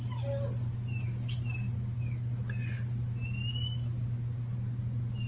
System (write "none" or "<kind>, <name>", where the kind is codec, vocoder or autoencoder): none